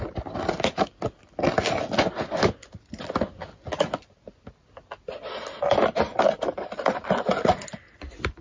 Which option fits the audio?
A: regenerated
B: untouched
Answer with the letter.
B